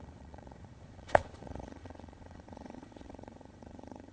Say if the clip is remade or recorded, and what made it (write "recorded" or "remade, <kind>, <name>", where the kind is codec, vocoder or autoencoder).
remade, vocoder, Vocos